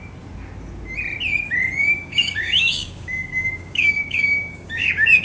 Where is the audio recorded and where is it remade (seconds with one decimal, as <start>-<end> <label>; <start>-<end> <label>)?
0.0-1.8 recorded; 1.8-5.2 remade